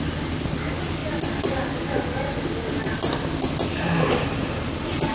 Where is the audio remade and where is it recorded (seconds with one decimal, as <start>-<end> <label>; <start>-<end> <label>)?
0.0-5.1 recorded